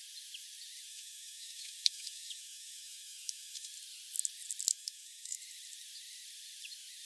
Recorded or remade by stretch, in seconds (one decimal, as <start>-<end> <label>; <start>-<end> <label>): 0.0-0.9 recorded; 0.9-3.7 remade; 3.7-4.7 recorded; 4.7-5.4 remade; 5.4-7.1 recorded

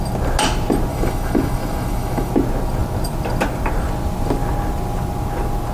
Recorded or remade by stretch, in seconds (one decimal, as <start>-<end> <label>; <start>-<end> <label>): 0.0-0.9 recorded; 0.9-2.3 remade; 2.3-5.7 recorded

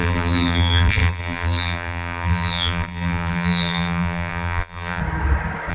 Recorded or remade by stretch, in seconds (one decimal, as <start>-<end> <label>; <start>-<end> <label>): 0.0-5.0 remade; 5.0-5.7 recorded

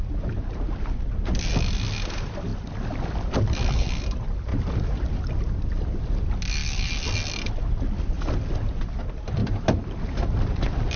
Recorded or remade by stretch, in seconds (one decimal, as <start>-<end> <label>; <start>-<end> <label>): 0.0-2.5 recorded; 2.5-4.0 remade; 4.0-4.5 recorded; 4.5-5.3 remade; 5.3-9.4 recorded; 9.4-11.0 remade

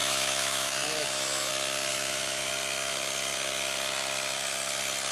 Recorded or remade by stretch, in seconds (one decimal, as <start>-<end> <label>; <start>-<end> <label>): 0.0-1.5 remade; 1.5-1.9 recorded; 1.9-2.5 remade; 2.5-5.1 recorded

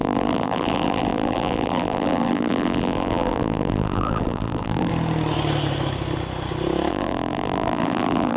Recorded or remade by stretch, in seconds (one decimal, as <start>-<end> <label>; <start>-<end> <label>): 0.0-4.9 remade; 4.9-6.9 recorded; 6.9-8.4 remade

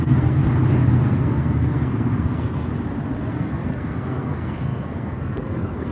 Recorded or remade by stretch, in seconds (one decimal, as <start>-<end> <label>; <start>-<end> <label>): 0.0-0.4 remade; 0.4-0.9 recorded; 0.9-2.7 remade; 2.7-3.3 recorded; 3.3-5.9 remade